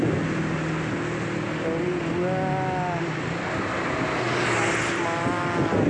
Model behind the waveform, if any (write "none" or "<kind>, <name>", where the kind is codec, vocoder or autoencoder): none